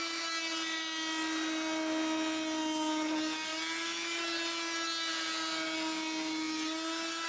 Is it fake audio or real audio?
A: real